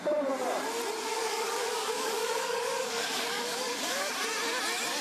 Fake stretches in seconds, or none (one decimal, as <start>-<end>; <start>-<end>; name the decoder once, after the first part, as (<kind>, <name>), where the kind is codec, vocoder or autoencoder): 1.1-4.1 (codec, DAC)